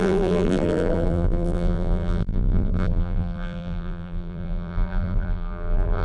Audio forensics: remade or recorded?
remade